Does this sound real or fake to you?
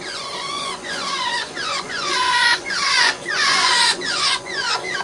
fake